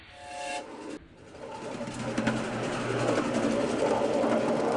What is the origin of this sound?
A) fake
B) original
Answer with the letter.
B